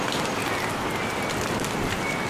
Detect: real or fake real